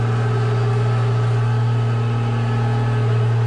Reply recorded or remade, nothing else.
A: recorded